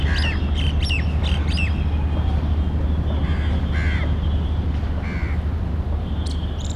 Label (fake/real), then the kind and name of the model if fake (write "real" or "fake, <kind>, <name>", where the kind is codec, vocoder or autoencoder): real